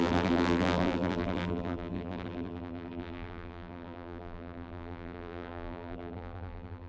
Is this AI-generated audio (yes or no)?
yes